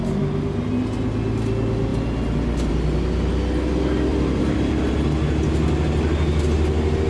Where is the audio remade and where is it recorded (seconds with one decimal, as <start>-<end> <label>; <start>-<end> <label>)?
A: 0.0-4.1 recorded; 4.1-4.9 remade; 4.9-7.1 recorded